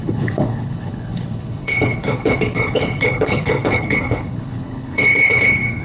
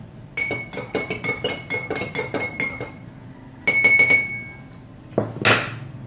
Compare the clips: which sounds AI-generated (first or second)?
first